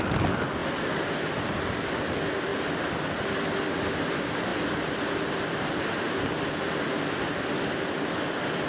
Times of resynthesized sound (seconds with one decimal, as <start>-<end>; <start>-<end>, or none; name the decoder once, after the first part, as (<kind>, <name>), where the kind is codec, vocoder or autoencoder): 0.6-1.5 (vocoder, BigVGAN v2); 4.5-5.8